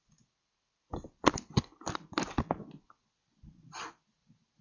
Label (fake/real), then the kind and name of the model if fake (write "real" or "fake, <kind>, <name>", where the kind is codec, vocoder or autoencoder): real